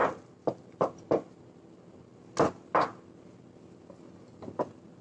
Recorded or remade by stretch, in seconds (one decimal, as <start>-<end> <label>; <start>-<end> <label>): 0.0-5.0 recorded